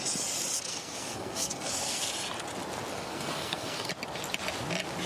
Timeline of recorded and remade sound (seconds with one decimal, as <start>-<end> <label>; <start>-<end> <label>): 0.0-0.7 recorded; 0.7-2.1 remade; 2.1-2.9 recorded; 2.9-3.9 remade; 3.9-5.1 recorded